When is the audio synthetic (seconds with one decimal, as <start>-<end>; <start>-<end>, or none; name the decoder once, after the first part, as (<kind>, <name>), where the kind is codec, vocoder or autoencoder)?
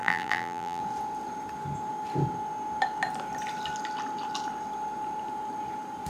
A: 0.0-0.8 (vocoder, BigVGAN v2)